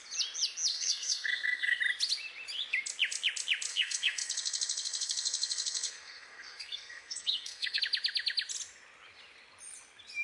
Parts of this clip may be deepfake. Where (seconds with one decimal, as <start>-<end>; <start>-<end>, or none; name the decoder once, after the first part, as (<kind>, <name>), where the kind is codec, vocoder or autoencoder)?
0.7-1.8 (codec, SNAC); 3.7-7.8